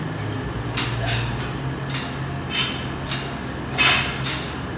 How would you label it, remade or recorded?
recorded